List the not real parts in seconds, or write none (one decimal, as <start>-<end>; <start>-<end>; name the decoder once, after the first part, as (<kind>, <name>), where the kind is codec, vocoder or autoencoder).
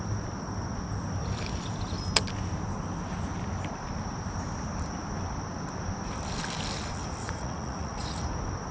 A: 7.2-8.2 (vocoder, Vocos)